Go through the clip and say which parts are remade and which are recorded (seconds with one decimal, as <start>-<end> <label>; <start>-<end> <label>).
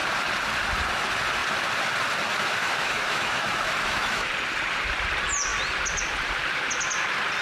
0.0-2.6 recorded; 2.6-4.3 remade; 4.3-7.4 recorded